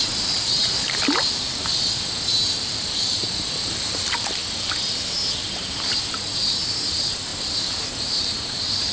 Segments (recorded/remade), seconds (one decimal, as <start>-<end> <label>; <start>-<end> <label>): 0.0-4.4 remade; 4.4-6.0 recorded; 6.0-8.9 remade